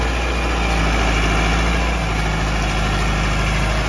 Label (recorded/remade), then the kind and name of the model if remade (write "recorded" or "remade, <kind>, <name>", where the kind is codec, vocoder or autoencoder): recorded